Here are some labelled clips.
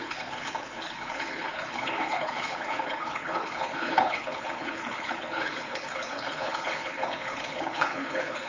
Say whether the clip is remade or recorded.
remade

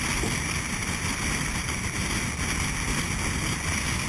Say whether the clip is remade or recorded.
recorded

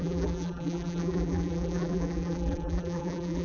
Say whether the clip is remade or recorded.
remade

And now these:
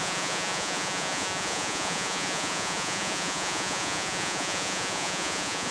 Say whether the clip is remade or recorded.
remade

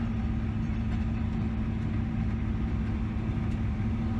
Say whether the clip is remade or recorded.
recorded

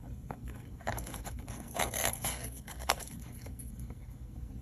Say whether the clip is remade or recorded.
remade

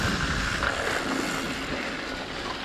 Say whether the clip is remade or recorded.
recorded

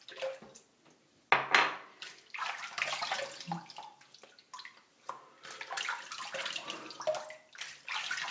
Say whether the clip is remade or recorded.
recorded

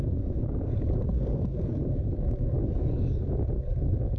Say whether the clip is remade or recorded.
remade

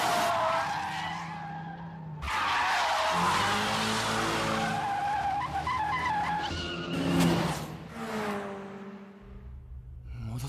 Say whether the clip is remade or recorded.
recorded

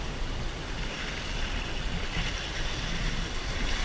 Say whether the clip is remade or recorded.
recorded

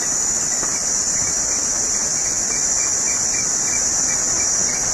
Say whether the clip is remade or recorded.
recorded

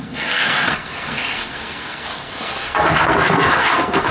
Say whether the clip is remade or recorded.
remade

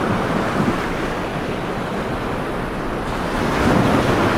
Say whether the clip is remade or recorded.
recorded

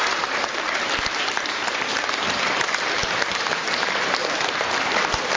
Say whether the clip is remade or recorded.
remade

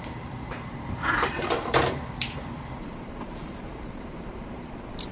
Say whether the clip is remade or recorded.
remade